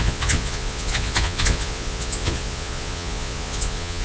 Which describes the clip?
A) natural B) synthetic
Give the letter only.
B